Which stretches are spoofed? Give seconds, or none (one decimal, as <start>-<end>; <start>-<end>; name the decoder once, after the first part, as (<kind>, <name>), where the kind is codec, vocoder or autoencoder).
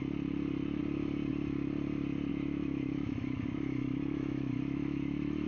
2.3-5.5 (autoencoder, DAC-VAE)